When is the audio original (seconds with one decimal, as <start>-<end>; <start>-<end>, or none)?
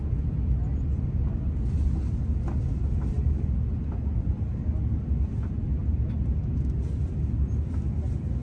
0.0-8.4